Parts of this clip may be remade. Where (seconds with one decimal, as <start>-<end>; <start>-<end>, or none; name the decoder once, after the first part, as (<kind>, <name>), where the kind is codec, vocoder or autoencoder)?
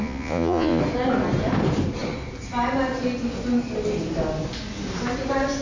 0.0-0.8 (vocoder, Vocos)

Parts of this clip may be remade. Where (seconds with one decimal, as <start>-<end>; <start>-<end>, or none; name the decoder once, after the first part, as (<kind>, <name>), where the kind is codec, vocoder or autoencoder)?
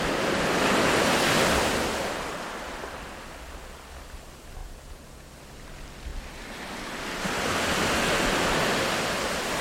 4.6-5.3 (vocoder, Vocos)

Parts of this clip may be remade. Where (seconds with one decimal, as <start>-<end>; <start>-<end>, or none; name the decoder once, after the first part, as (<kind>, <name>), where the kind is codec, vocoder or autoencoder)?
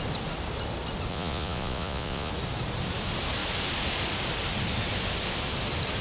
1.1-2.3 (vocoder, Vocos)